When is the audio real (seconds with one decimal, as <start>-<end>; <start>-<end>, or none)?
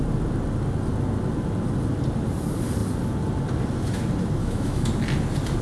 0.0-4.4; 4.9-5.6